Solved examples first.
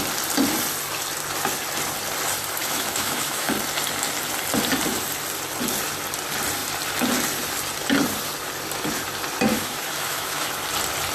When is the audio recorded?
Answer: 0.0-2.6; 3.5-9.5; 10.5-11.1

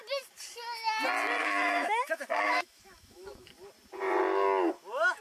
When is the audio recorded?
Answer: 0.0-1.4; 3.5-5.2

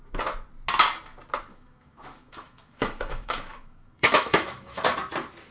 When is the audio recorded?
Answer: 0.0-1.5; 4.8-5.5

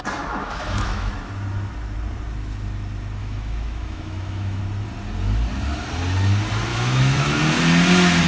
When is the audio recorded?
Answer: 0.0-0.4; 1.1-3.2; 4.6-6.7; 7.4-8.3

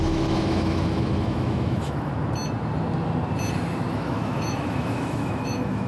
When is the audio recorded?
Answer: 2.1-3.9

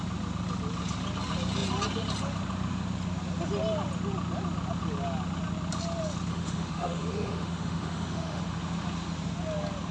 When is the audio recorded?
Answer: 0.0-6.3; 8.4-9.9

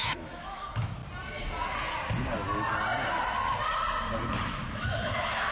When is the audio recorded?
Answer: 1.0-4.3

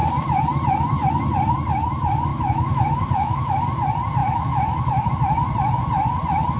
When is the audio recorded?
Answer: 0.0-2.3; 3.6-4.2; 5.1-6.6